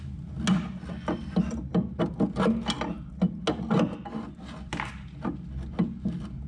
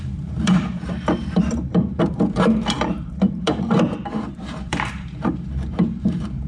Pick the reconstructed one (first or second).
second